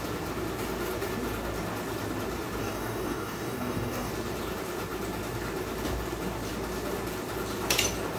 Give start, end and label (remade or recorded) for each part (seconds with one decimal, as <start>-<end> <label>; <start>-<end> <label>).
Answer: 0.0-2.6 recorded; 2.6-4.1 remade; 4.1-8.2 recorded